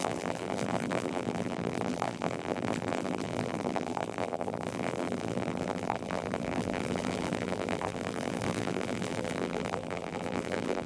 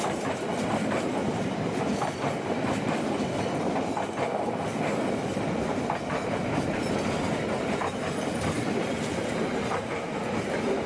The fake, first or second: first